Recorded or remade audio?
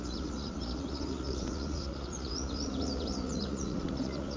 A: remade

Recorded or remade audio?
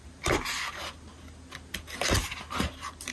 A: recorded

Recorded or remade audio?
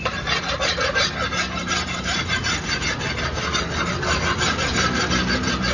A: remade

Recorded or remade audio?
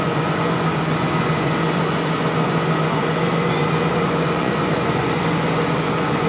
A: remade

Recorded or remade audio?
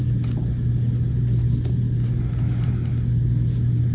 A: recorded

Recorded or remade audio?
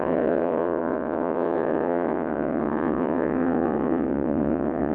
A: remade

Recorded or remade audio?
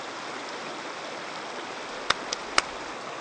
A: recorded